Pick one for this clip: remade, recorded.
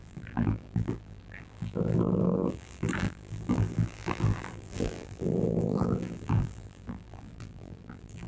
remade